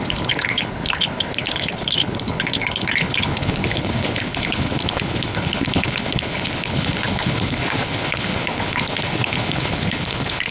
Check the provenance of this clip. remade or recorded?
remade